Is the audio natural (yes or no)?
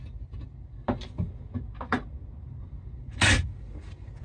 yes